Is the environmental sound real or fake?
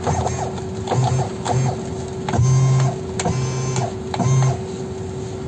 real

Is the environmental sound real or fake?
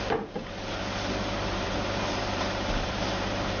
fake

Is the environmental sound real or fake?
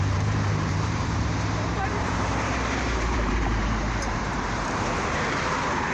fake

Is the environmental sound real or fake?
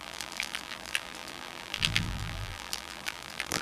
fake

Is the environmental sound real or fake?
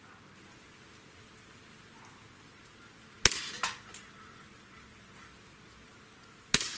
real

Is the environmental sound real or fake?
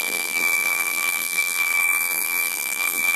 fake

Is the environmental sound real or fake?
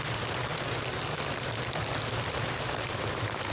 fake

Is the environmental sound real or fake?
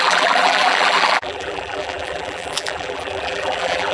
fake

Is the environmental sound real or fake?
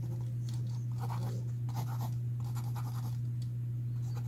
real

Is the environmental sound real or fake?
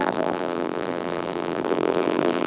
fake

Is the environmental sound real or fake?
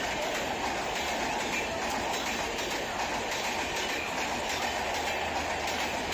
real